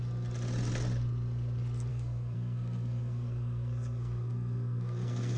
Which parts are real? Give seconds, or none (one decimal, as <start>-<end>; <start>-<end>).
0.0-1.9